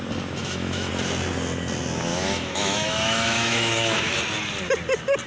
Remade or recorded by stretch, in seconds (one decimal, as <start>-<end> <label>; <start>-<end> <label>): 0.0-0.4 recorded; 0.4-0.9 remade; 0.9-2.1 recorded; 2.1-4.2 remade; 4.2-5.3 recorded